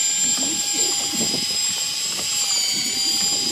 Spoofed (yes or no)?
no